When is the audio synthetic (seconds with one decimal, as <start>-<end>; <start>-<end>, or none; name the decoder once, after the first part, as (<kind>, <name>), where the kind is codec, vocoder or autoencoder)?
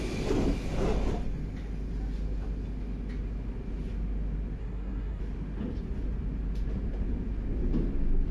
4.6-5.2 (codec, SNAC)